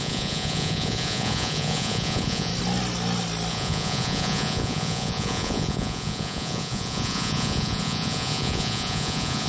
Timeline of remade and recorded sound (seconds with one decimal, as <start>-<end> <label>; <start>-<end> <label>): 0.0-2.5 remade; 2.5-3.5 recorded; 3.5-9.5 remade